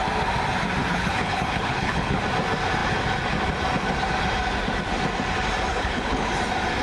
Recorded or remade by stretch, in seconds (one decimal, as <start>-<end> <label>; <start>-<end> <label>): 0.0-0.9 recorded; 0.9-2.2 remade; 2.2-5.7 recorded; 5.7-6.3 remade; 6.3-6.8 recorded

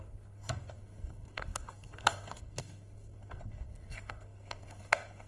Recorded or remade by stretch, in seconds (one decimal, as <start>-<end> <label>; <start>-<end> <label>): 0.0-5.3 remade

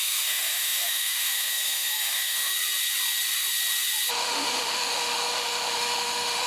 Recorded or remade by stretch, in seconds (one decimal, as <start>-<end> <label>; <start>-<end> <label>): 0.0-2.5 remade; 2.5-4.1 recorded; 4.1-6.5 remade

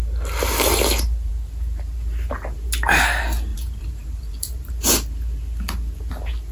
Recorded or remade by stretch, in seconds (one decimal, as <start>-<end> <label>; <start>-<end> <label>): 0.0-3.5 recorded; 3.5-4.7 remade; 4.7-6.5 recorded

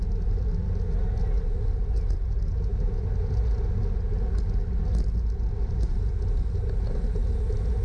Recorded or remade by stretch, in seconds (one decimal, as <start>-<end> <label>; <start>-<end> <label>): 0.0-2.7 recorded; 2.7-3.4 remade; 3.4-5.6 recorded; 5.6-6.1 remade; 6.1-7.8 recorded

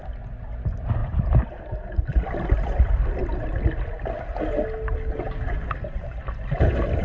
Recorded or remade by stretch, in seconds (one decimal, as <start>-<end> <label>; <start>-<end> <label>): 0.0-3.2 remade; 3.2-7.0 recorded